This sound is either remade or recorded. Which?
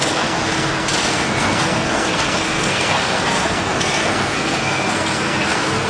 remade